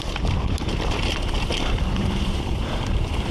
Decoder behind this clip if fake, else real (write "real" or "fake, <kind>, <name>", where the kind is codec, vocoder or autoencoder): fake, vocoder, BigVGAN v2